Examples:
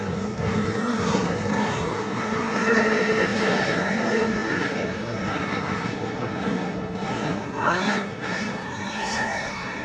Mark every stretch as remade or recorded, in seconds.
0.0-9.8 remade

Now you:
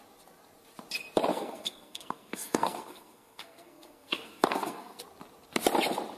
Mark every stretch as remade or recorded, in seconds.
0.0-1.3 recorded; 1.3-5.0 remade; 5.0-6.2 recorded

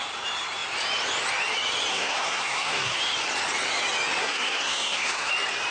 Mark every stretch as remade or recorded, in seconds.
0.0-1.9 recorded; 1.9-3.0 remade; 3.0-4.2 recorded; 4.2-5.3 remade; 5.3-5.7 recorded

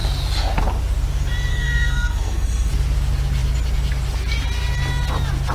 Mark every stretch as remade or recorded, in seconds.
0.0-1.5 recorded; 1.5-2.7 remade; 2.7-5.5 recorded

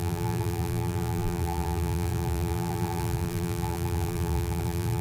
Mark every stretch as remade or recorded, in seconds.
0.0-5.0 remade

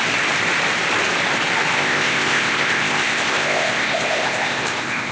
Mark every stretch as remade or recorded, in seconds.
0.0-1.7 recorded; 1.7-5.1 remade

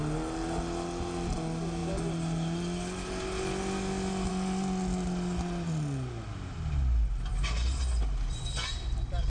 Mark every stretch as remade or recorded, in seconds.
0.0-9.3 recorded